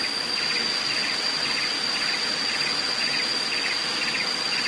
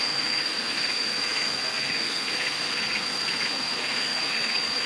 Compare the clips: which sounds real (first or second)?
first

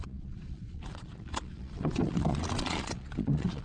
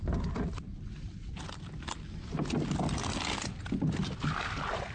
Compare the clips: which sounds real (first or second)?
second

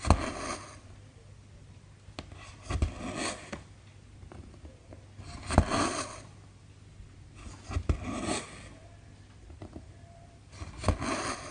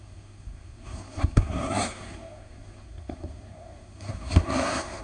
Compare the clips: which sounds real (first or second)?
first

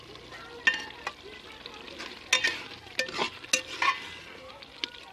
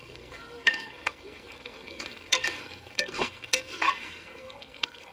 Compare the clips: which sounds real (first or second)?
first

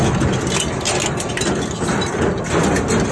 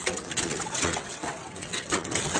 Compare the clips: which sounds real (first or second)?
first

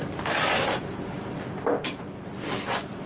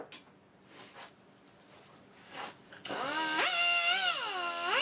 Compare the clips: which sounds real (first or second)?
second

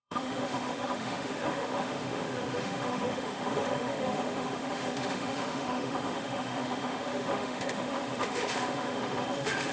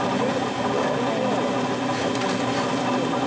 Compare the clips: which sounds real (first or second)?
second